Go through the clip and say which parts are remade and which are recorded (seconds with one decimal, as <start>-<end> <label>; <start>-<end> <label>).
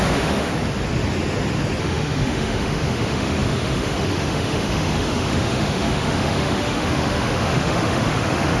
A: 0.0-0.5 remade; 0.5-1.8 recorded; 1.8-8.6 remade